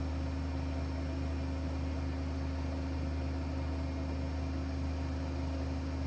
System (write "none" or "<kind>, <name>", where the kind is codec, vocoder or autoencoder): none